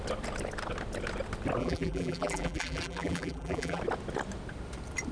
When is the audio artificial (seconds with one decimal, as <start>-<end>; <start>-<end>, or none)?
1.6-3.8